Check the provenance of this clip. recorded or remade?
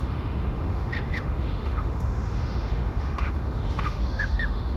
remade